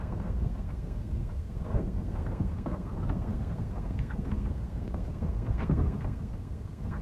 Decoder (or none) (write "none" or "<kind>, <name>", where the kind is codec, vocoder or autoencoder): codec, SNAC